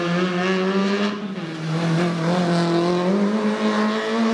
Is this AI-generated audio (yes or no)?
no